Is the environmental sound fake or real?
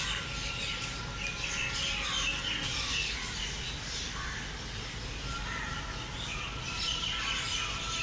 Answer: real